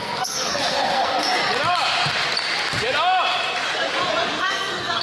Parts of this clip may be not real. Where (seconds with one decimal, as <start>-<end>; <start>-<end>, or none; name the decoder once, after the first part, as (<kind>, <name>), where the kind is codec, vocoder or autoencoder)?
0.0-1.4 (codec, SNAC); 4.4-5.0